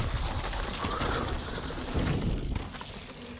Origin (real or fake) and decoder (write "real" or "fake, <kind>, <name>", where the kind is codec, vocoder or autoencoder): real